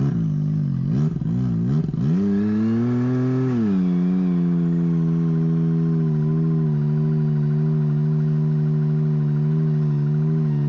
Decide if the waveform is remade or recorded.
recorded